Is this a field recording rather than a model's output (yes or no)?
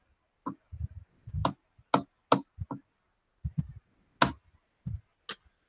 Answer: yes